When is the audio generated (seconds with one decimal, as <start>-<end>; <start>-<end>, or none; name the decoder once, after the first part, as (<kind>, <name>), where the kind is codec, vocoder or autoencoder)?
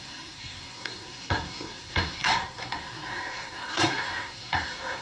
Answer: 0.0-5.0 (codec, SNAC)